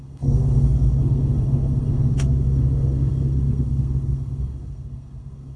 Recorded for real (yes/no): no